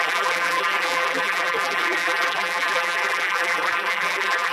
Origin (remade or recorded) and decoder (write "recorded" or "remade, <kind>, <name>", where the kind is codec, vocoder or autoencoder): remade, vocoder, BigVGAN v2